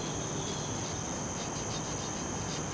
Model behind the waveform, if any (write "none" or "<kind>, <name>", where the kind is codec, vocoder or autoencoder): none